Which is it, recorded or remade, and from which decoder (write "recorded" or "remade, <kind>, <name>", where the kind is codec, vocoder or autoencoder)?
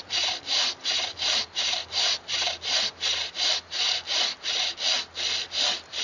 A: recorded